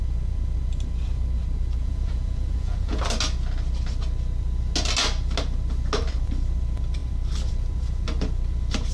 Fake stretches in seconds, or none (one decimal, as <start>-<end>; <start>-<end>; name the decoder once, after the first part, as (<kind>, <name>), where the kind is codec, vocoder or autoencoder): 1.8-3.0 (vocoder, Vocos)